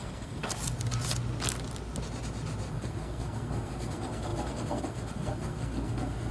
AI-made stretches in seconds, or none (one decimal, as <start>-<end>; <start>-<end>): 0.0-0.5; 2.7-6.3